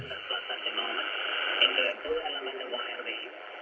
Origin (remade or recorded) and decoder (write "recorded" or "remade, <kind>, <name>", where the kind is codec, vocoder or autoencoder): remade, vocoder, BigVGAN v2